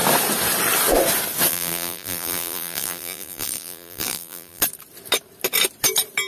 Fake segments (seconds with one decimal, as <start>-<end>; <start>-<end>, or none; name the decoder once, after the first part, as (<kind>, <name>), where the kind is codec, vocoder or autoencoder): 1.5-4.6 (vocoder, BigVGAN v2)